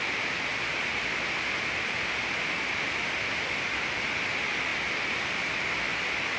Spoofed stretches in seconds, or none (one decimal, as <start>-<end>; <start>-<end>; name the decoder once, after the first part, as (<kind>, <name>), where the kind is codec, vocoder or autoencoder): none